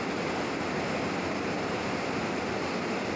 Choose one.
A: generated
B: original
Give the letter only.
B